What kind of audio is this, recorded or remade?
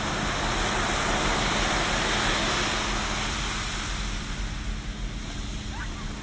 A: recorded